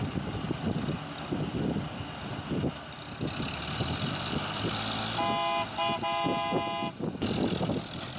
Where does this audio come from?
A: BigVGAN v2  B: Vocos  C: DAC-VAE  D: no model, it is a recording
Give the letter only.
D